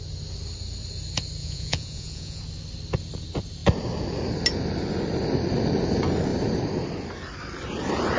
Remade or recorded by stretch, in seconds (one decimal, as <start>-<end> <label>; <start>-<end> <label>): 0.0-1.4 recorded; 1.4-2.4 remade; 2.4-8.2 recorded